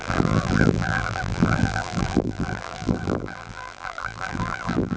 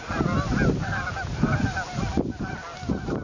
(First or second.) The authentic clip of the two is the second